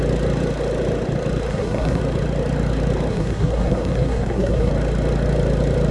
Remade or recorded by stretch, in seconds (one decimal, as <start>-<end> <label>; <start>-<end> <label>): 0.0-1.5 recorded; 1.5-2.0 remade; 2.0-3.1 recorded; 3.1-4.7 remade; 4.7-5.9 recorded